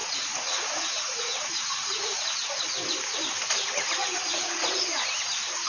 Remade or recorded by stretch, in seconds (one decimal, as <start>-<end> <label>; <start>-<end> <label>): 0.0-2.6 remade; 2.6-4.0 recorded; 4.0-4.8 remade; 4.8-5.7 recorded